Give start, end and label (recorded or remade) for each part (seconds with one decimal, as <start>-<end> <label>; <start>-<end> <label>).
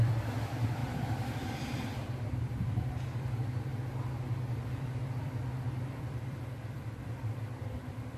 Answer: 0.0-3.7 remade; 3.7-4.5 recorded; 4.5-8.2 remade